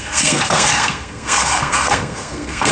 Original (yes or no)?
no